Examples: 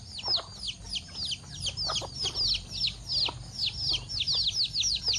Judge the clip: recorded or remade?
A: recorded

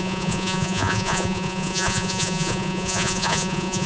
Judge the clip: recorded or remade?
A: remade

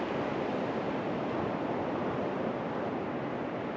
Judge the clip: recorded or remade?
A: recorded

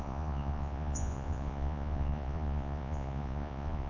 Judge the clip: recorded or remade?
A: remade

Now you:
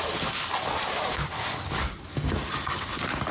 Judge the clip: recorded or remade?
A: recorded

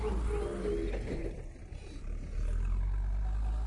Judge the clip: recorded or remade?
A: recorded